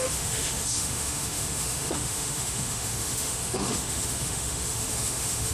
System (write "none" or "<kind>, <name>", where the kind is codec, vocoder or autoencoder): autoencoder, DAC-VAE